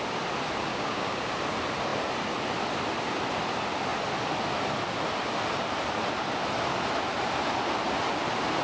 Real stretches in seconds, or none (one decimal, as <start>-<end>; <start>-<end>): 0.0-0.7; 1.4-8.6